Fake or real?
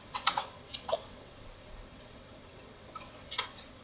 fake